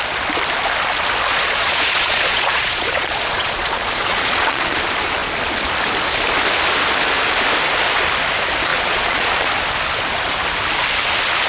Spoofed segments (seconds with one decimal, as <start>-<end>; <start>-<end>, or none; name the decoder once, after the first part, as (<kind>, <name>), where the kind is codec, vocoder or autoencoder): 1.3-4.8 (vocoder, Vocos); 8.7-9.5